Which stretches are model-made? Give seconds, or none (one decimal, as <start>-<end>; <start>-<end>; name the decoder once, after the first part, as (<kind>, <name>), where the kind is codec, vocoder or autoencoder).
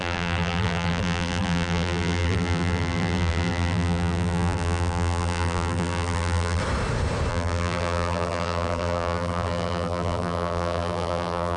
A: 0.0-6.6 (vocoder, BigVGAN v2); 7.3-11.6